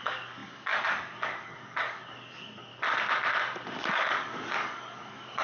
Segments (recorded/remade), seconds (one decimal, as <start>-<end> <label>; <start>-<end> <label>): 0.0-2.7 remade; 2.7-3.9 recorded; 3.9-5.4 remade